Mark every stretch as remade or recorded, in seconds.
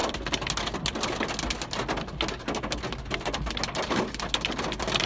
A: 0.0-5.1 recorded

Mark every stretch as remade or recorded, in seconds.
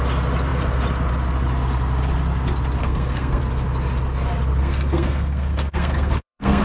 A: 0.0-2.8 recorded; 2.8-3.4 remade; 3.4-4.6 recorded; 4.6-6.6 remade